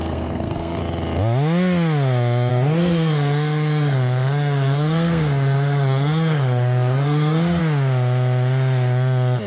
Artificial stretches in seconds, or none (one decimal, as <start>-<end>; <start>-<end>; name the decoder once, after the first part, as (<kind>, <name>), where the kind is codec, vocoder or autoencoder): 0.0-0.8 (codec, SNAC); 2.5-7.6